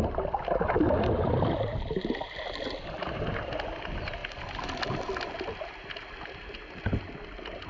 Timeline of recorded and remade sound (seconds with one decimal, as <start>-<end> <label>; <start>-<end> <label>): 0.0-7.7 recorded